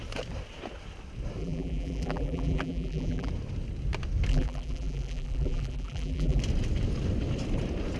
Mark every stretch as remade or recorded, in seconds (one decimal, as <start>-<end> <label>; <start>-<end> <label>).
0.0-1.4 recorded; 1.4-3.3 remade; 3.3-4.3 recorded; 4.3-6.4 remade; 6.4-8.0 recorded